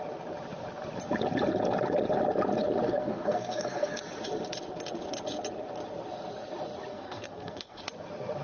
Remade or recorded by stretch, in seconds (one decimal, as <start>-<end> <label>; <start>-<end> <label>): 0.0-2.9 recorded; 2.9-4.0 remade; 4.0-6.9 recorded; 6.9-7.8 remade; 7.8-8.4 recorded